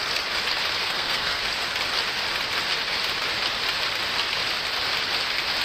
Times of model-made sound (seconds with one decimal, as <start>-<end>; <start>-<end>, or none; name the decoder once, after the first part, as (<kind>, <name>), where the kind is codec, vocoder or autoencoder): 0.8-1.4 (codec, SNAC)

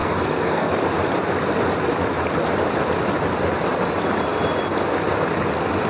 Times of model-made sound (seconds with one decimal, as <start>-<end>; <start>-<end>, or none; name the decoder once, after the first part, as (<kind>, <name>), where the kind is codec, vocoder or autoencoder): 0.0-0.7 (codec, SNAC)

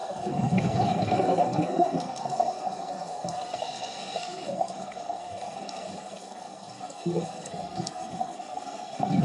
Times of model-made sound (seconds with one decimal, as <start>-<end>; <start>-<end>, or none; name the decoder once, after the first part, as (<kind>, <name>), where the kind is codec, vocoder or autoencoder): 0.0-9.2 (codec, SNAC)

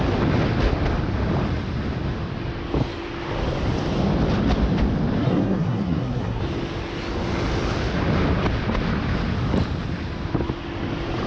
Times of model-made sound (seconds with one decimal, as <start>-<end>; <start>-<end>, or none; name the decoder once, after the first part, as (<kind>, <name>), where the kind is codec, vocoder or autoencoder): 5.2-6.4 (codec, SNAC)

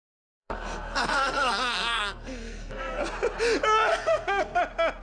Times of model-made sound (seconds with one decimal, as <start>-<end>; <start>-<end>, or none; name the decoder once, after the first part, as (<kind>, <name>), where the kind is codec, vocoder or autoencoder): 0.0-3.0 (codec, SNAC); 3.9-4.6

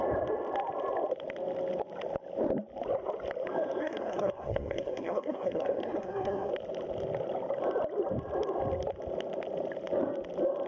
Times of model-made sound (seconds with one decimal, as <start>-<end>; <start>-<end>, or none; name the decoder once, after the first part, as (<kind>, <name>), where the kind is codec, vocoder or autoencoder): 3.8-6.5 (codec, SNAC)

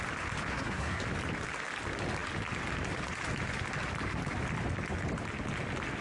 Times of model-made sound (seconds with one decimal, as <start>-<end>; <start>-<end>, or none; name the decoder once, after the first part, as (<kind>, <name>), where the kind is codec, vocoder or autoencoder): 0.5-1.0 (codec, SNAC)

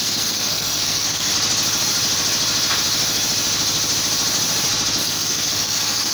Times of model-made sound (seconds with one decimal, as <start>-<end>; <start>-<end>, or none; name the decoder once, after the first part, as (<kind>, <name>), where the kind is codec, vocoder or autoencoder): 0.0-1.3 (codec, SNAC); 5.0-6.1